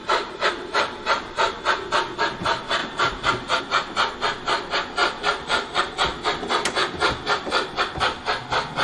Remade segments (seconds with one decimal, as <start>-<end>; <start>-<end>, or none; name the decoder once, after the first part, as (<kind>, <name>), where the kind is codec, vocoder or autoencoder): 0.0-1.6 (vocoder, BigVGAN v2); 2.8-3.6; 5.0-5.8